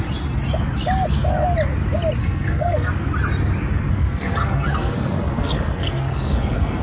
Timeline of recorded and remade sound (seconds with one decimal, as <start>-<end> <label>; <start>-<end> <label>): 0.0-2.2 recorded; 2.2-2.9 remade; 2.9-3.9 recorded; 3.9-6.8 remade